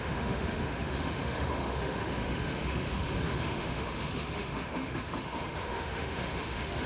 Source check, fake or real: fake